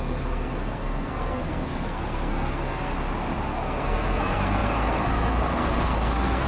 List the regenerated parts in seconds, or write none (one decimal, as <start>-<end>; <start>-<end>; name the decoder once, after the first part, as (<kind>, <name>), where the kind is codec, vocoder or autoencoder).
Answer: 0.0-2.9 (codec, SNAC); 3.5-6.5